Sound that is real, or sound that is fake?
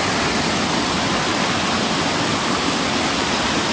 real